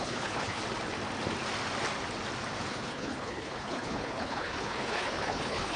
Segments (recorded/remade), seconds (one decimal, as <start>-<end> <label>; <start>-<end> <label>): 0.0-0.6 remade; 0.6-2.7 recorded; 2.7-5.8 remade